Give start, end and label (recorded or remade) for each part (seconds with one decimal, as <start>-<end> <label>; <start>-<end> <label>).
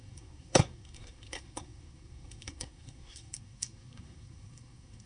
0.0-5.1 remade